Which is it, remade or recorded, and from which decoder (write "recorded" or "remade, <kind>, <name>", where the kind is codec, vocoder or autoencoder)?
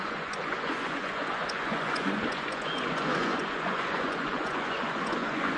remade, vocoder, Vocos